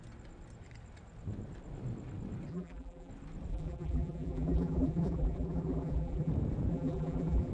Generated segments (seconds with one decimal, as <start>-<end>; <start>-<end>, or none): 2.5-3.1; 3.5-6.3; 6.7-7.5